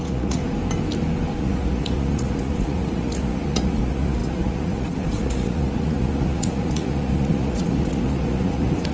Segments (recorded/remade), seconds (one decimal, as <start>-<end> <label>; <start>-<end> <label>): 0.0-0.4 remade; 0.4-1.4 recorded; 1.4-8.9 remade